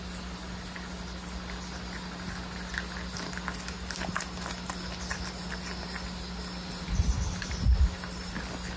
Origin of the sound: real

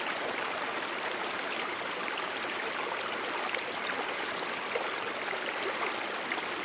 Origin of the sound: real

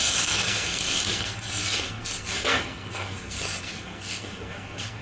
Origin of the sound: fake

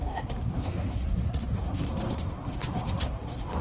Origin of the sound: fake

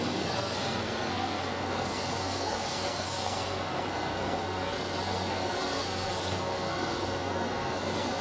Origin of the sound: fake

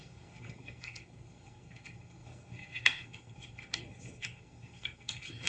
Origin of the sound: fake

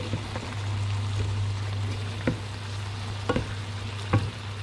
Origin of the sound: real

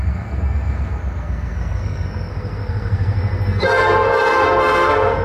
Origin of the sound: fake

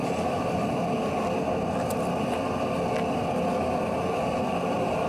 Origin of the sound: real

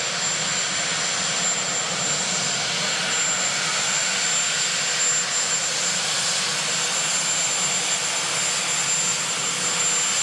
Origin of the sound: real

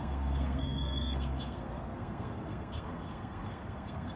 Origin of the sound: fake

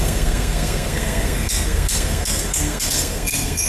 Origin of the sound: fake